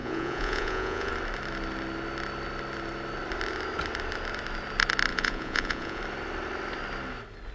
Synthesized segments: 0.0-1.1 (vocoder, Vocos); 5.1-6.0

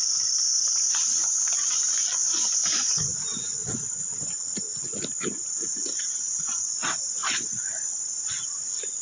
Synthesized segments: 3.6-4.3 (vocoder, Vocos); 7.2-8.4

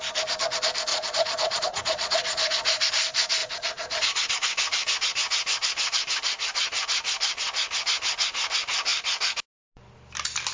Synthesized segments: 0.9-2.9 (vocoder, Vocos); 3.4-4.3